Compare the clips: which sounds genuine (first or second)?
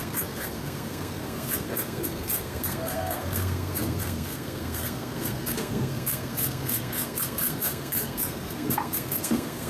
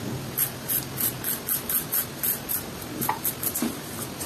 second